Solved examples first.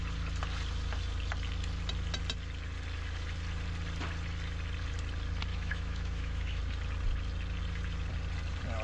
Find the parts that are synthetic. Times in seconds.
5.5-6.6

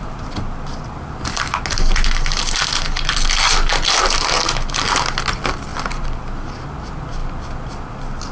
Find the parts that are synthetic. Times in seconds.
none

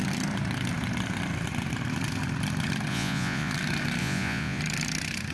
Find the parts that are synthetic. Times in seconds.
2.9-3.5; 4.0-4.6

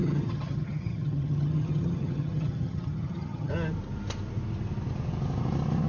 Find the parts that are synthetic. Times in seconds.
0.0-3.5

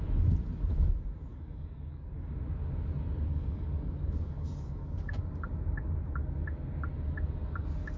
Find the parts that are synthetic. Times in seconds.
1.3-2.3; 3.3-5.2

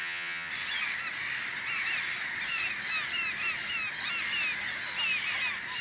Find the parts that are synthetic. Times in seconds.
0.0-0.5

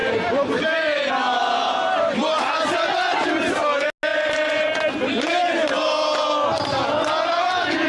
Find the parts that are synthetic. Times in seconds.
0.0-1.1; 1.6-2.4; 4.1-4.7